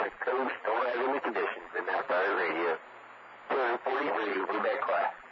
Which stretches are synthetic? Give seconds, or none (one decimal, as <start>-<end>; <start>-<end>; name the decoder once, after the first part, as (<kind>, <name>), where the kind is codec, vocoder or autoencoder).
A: 0.0-2.1 (vocoder, BigVGAN v2); 3.8-5.3